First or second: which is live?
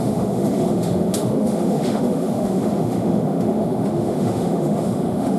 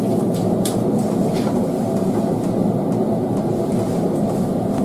second